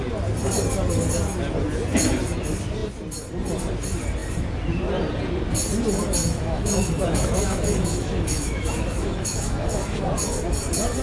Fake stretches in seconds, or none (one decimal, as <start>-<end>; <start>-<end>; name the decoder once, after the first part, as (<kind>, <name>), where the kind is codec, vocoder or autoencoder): 6.2-10.1 (autoencoder, DAC-VAE)